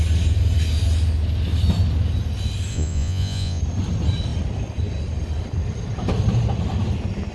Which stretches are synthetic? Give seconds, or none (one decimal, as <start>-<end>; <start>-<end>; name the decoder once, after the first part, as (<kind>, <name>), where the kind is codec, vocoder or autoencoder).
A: 2.7-3.6 (vocoder, Vocos)